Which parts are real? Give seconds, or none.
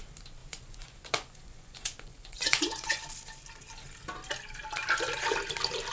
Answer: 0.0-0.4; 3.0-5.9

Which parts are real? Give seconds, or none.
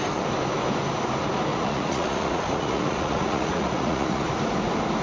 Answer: 0.0-1.5; 4.3-5.0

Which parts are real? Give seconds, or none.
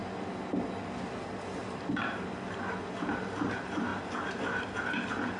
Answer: 0.0-5.4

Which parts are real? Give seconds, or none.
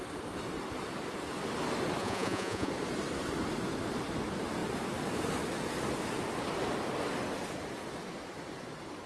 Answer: 0.0-2.0; 2.7-9.1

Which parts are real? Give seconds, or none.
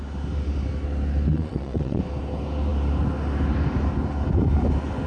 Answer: 0.0-1.3; 2.0-5.1